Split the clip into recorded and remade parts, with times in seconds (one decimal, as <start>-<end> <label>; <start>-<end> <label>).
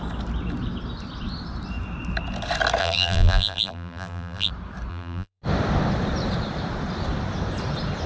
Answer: 0.0-2.8 recorded; 2.8-4.5 remade; 4.5-4.9 recorded; 4.9-5.4 remade; 5.4-8.1 recorded